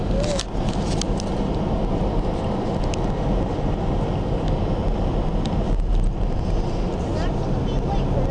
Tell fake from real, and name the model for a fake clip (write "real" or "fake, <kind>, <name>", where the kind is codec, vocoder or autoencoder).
real